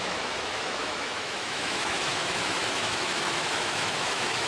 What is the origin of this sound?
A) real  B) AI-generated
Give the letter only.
B